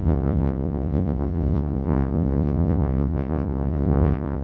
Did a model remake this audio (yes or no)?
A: yes